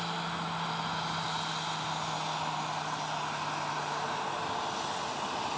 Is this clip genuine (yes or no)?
yes